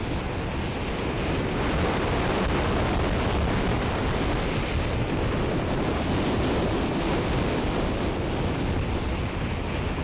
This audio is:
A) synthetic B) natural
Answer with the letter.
B